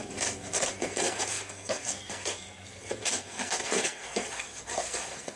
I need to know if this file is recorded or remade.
remade